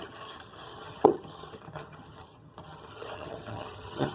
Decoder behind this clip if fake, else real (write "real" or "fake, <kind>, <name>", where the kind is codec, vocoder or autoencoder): fake, vocoder, HiFi-GAN